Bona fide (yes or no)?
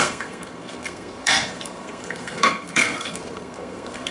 no